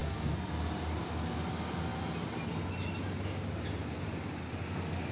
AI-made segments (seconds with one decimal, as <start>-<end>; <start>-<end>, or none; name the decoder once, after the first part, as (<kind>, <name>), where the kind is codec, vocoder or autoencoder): 0.0-0.5 (codec, SNAC)